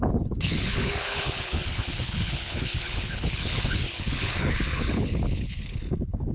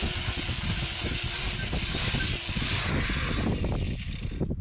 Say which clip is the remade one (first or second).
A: first